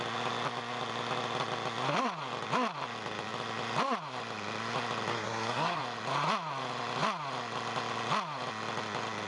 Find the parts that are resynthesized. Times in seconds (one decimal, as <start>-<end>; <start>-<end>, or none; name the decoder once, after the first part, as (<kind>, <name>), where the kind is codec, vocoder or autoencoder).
5.1-5.8 (codec, SNAC)